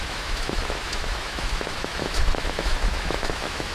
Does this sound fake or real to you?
fake